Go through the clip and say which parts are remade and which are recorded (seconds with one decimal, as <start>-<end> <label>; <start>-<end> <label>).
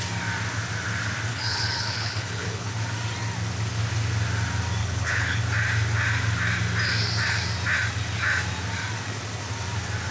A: 0.0-1.3 recorded; 1.3-2.7 remade; 2.7-4.8 recorded; 4.8-5.4 remade; 5.4-10.1 recorded